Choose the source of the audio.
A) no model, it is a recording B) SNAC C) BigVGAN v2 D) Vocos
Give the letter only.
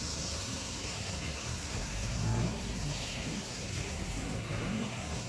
B